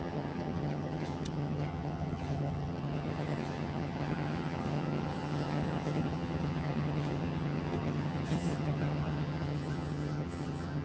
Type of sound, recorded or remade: remade